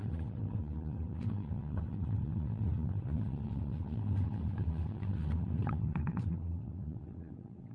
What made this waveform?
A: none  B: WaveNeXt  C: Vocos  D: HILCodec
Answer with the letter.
B